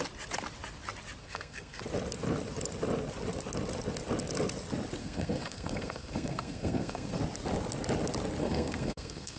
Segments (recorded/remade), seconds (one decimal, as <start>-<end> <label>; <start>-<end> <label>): 0.0-1.2 recorded; 1.2-1.8 remade; 1.8-5.0 recorded; 5.0-7.2 remade; 7.2-8.4 recorded; 8.4-9.4 remade